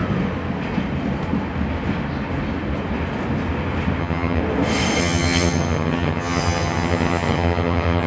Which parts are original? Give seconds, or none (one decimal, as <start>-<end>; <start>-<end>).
0.0-4.0; 4.4-5.0